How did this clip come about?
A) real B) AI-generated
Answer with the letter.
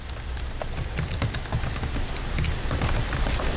B